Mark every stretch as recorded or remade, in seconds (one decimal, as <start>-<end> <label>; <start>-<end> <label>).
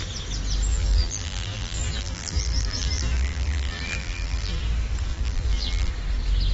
0.0-0.7 recorded; 0.7-4.6 remade; 4.6-5.1 recorded; 5.1-5.9 remade; 5.9-6.5 recorded